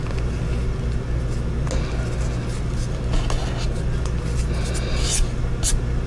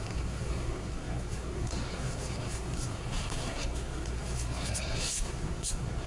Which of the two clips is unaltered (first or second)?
first